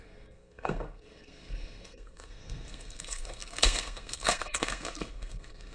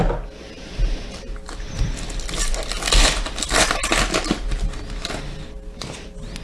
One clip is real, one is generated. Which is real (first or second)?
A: second